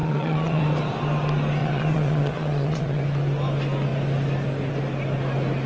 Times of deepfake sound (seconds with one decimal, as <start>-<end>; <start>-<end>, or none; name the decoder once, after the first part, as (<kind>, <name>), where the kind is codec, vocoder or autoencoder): 0.0-0.6 (vocoder, Vocos); 1.6-3.0